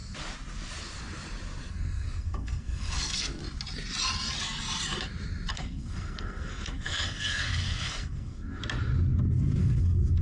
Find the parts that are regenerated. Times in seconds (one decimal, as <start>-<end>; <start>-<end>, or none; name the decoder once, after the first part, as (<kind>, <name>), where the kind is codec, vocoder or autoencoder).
1.7-3.4 (codec, SNAC); 5.5-8.6; 9.6-10.2